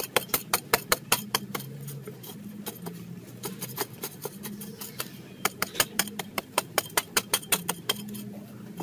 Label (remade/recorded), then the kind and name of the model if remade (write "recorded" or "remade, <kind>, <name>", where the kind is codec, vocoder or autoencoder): remade, vocoder, BigVGAN v2